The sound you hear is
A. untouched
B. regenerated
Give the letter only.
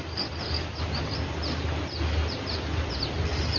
A